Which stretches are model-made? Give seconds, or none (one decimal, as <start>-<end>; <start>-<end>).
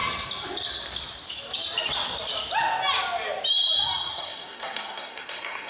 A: 4.1-5.7